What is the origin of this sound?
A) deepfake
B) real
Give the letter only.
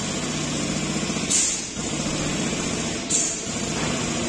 B